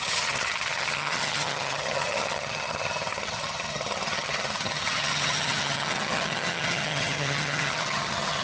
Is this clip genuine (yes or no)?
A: no